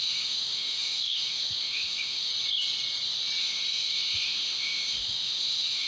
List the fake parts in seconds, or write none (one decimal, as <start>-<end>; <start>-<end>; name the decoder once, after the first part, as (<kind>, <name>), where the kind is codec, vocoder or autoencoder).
0.0-2.3 (autoencoder, DAC-VAE); 3.4-5.9